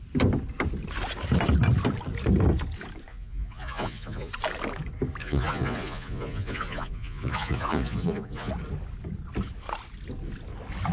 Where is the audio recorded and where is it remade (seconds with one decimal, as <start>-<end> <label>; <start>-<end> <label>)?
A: 0.0-3.1 recorded; 3.1-4.3 remade; 4.3-5.2 recorded; 5.2-8.5 remade; 8.5-10.9 recorded